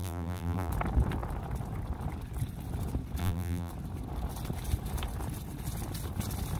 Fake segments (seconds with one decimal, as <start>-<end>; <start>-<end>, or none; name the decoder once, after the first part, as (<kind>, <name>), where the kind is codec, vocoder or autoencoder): 0.0-0.7 (vocoder, BigVGAN v2); 3.2-3.7